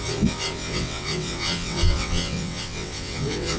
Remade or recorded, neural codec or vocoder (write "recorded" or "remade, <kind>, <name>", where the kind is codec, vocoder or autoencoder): remade, vocoder, WaveNeXt